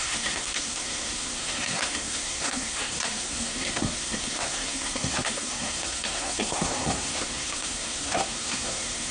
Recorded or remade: remade